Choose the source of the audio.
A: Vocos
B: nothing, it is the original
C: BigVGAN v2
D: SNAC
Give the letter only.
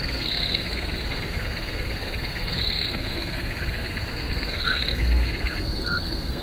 D